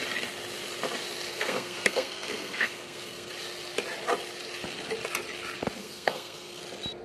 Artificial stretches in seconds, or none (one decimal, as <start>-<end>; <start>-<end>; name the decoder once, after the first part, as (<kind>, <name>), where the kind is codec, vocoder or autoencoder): 1.3-3.3 (codec, SNAC); 5.8-6.6